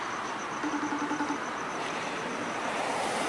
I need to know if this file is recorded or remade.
remade